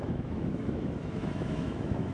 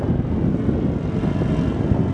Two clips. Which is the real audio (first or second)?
second